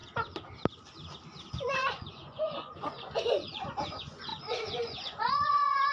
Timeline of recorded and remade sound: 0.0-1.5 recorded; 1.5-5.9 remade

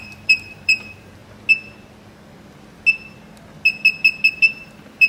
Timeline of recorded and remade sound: 0.0-1.2 remade; 1.2-4.3 recorded; 4.3-5.1 remade

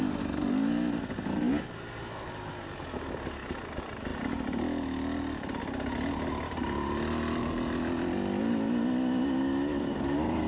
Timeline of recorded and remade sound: 0.0-10.5 recorded

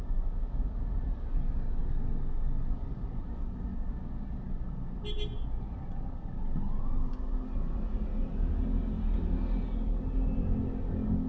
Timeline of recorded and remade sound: 0.0-11.3 recorded

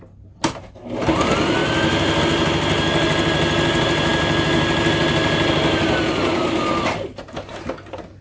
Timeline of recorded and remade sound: 0.0-8.2 recorded

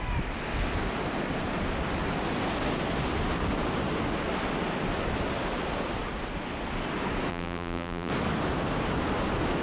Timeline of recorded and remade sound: 0.0-7.3 recorded; 7.3-8.1 remade; 8.1-9.6 recorded

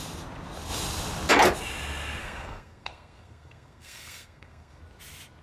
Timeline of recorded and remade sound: 0.0-2.2 recorded; 2.2-4.8 remade; 4.8-5.4 recorded

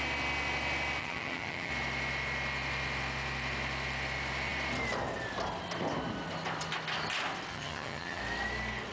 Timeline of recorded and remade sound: 0.0-1.0 recorded; 1.0-1.7 remade; 1.7-7.5 recorded; 7.5-8.2 remade; 8.2-8.9 recorded